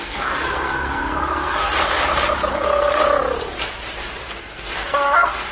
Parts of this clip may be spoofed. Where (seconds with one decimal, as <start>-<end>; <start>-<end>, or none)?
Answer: 0.0-2.0; 2.5-3.0; 4.4-5.5